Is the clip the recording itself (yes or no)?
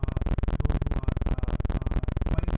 yes